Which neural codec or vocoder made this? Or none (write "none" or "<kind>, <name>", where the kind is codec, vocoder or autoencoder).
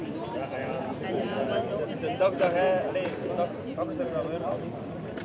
none